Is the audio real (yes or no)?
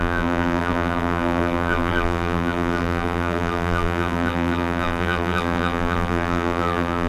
no